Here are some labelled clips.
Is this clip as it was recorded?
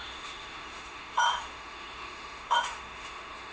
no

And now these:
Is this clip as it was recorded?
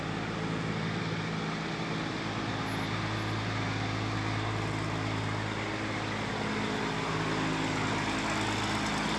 yes